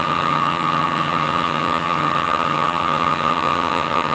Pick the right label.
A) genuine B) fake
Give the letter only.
B